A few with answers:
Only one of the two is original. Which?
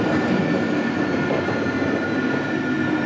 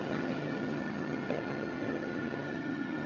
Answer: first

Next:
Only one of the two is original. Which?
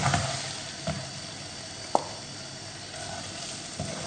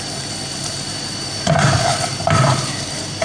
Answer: first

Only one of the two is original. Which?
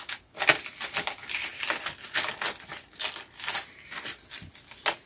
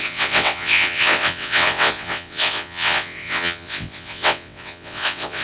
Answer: first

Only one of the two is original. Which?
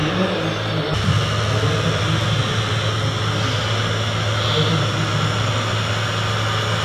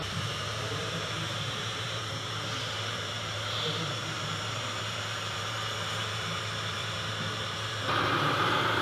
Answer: first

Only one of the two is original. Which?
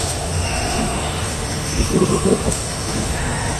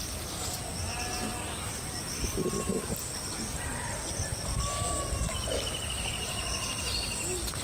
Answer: second